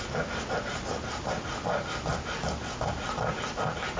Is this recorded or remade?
recorded